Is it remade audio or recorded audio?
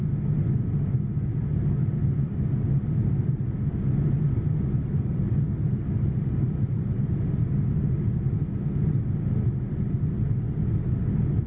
recorded